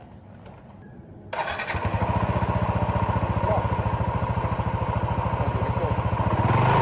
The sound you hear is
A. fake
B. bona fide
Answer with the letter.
B